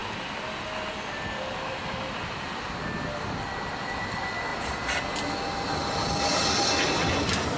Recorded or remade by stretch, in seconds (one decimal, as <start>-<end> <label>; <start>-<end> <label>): 0.0-7.6 recorded